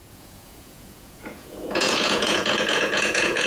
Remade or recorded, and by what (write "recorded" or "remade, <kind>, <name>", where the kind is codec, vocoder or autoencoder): remade, vocoder, Vocos